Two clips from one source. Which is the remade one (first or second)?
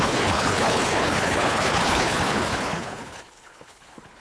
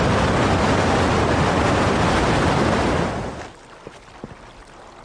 first